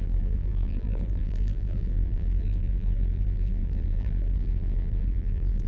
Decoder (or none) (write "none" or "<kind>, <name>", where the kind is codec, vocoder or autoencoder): vocoder, BigVGAN v2